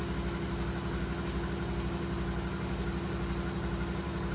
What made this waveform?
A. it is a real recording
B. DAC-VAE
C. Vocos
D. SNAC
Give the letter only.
A